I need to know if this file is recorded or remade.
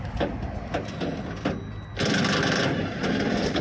recorded